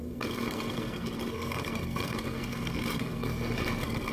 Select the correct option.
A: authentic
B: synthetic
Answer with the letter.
B